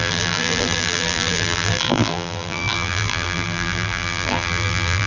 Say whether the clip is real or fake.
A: fake